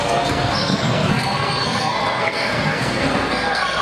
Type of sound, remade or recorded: remade